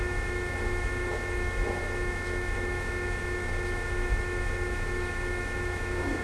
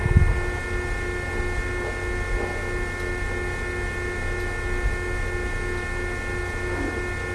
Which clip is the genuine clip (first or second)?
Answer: second